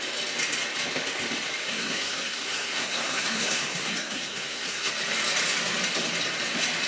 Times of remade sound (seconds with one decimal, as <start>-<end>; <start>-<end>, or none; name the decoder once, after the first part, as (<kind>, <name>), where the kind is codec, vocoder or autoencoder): 1.6-4.9 (codec, SNAC)